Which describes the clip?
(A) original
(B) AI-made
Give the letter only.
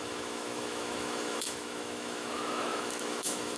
B